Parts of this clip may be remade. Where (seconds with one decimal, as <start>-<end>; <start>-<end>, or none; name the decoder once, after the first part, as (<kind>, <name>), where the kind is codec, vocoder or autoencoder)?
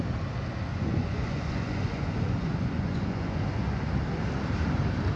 0.7-3.8 (vocoder, Vocos)